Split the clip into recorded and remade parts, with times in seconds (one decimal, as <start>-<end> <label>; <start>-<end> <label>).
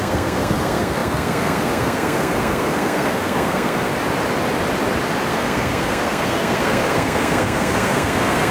0.0-3.9 remade; 3.9-5.3 recorded; 5.3-8.5 remade